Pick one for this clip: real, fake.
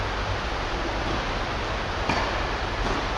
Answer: real